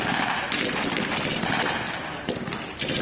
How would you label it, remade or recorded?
recorded